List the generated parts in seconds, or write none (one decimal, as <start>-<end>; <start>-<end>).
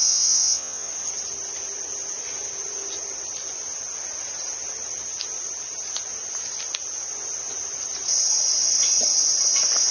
0.0-0.9